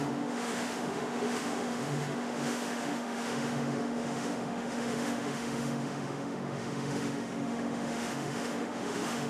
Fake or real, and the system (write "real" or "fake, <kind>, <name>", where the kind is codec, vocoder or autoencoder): fake, autoencoder, DAC-VAE